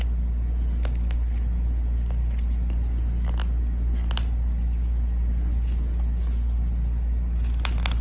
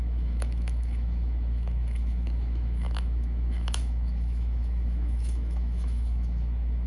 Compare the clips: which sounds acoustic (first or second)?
first